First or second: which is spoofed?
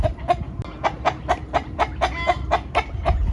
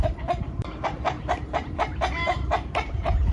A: second